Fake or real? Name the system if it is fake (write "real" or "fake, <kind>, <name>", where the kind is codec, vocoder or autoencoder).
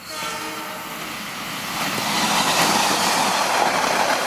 real